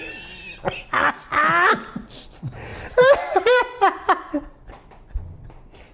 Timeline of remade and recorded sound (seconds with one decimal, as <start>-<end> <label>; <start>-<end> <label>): 0.0-2.7 recorded; 2.7-3.6 remade; 3.6-5.9 recorded